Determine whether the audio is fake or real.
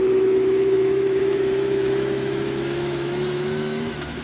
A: fake